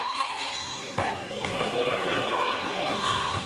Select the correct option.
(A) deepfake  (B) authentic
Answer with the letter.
A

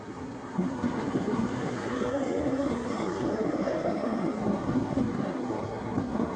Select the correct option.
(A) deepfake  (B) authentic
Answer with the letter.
A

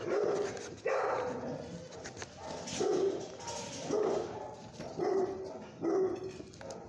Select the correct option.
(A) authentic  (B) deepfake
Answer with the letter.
A